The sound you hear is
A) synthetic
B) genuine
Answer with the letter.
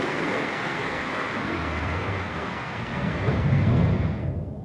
A